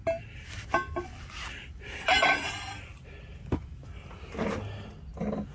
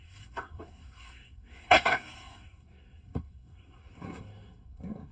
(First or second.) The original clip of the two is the first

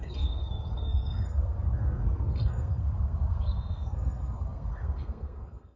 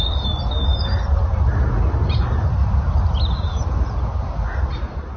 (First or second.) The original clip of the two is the second